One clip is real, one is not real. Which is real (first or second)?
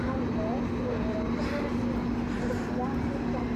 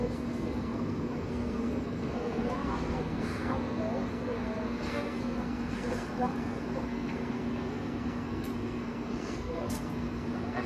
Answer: first